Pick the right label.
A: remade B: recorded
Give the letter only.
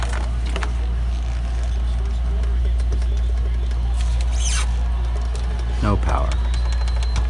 B